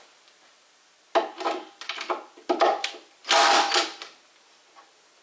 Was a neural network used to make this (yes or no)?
no